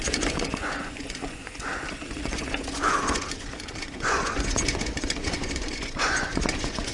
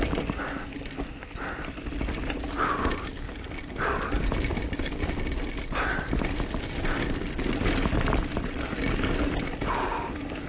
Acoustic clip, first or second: second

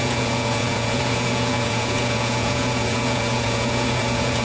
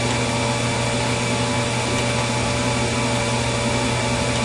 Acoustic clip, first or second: second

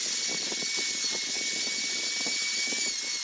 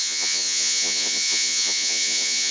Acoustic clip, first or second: first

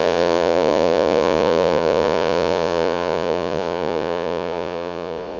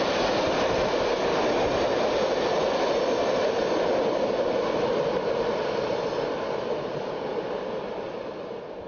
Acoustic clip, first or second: second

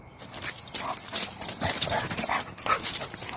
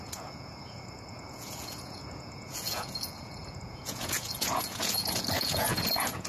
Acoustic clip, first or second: first